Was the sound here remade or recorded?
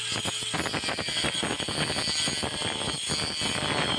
recorded